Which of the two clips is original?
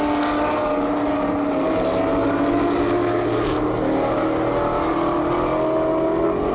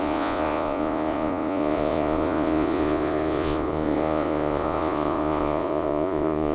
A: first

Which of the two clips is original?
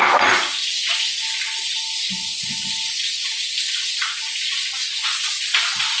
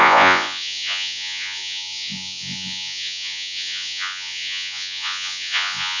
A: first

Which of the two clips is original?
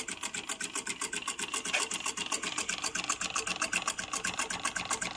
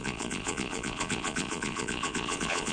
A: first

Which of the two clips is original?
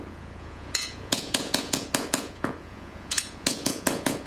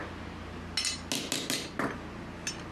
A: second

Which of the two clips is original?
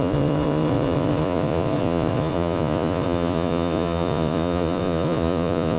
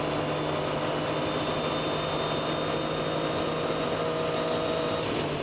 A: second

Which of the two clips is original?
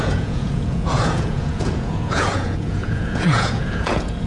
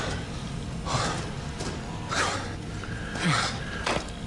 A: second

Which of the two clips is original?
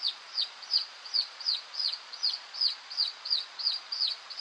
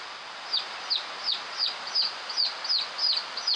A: second